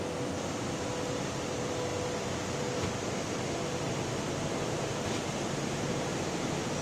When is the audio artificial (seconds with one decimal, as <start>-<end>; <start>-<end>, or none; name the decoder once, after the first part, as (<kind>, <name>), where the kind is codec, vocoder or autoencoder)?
none